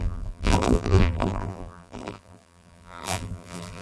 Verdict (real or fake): fake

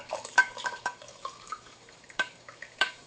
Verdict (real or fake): fake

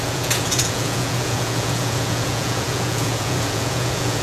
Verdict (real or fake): fake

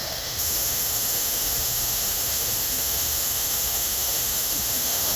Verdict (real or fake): fake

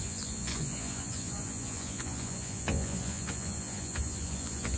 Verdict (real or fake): fake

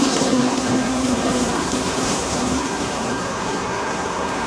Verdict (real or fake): fake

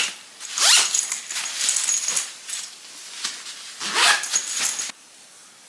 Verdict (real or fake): real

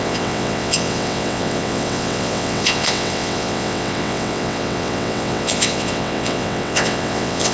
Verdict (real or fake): fake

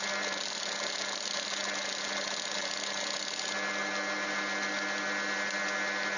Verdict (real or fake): real